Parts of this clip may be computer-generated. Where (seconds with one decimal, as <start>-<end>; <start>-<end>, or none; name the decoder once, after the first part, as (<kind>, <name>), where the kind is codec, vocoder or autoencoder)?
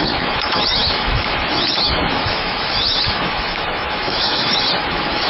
0.0-5.3 (autoencoder, DAC-VAE)